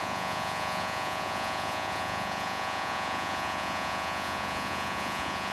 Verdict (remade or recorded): remade